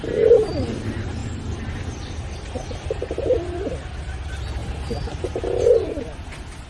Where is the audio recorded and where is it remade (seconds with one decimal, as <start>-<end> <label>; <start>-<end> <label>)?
0.0-6.7 recorded